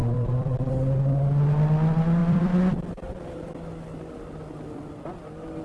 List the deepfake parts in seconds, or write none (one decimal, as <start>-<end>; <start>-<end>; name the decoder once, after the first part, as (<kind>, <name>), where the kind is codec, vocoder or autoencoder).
0.0-0.7 (vocoder, BigVGAN v2); 2.2-3.5